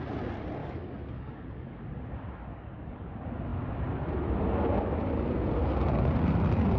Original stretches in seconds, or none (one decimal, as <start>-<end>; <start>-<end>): 0.0-0.6; 1.8-2.5; 3.1-6.8